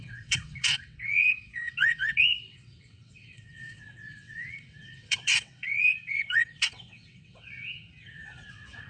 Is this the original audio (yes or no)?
no